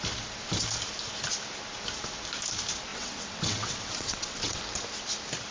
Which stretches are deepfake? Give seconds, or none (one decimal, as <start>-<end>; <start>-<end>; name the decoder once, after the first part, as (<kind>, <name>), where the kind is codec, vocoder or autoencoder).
2.9-4.6 (vocoder, WaveNeXt)